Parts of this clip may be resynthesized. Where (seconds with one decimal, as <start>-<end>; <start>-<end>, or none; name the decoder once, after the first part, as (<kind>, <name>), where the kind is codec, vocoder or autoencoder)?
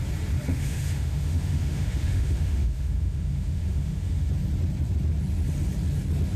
0.5-4.3 (autoencoder, DAC-VAE)